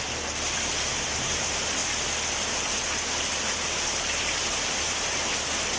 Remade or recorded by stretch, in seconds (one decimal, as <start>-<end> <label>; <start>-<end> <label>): 0.0-5.8 recorded